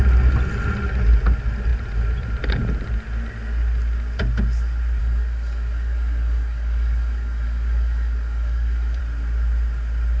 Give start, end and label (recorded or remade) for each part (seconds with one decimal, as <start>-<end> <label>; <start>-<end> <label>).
0.0-5.0 recorded; 5.0-9.0 remade; 9.0-10.2 recorded